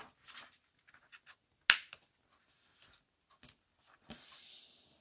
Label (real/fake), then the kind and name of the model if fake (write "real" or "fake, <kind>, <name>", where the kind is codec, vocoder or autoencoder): real